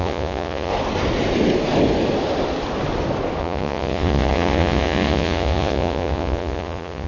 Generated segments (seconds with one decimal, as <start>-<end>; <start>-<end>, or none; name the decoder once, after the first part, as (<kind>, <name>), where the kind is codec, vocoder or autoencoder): 0.0-0.7 (vocoder, Vocos); 3.4-7.1